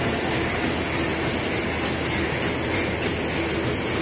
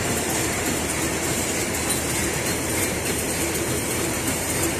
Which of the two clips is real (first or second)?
first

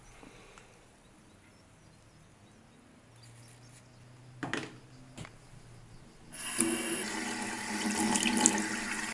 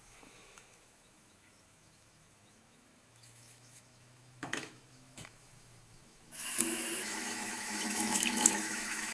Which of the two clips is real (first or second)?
first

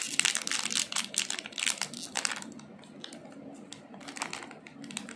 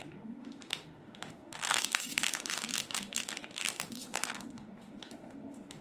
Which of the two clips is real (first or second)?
first